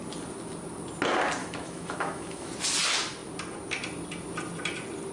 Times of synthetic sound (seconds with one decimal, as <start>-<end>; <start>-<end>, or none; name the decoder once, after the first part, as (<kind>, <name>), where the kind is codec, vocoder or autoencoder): 1.4-2.5 (autoencoder, DAC-VAE)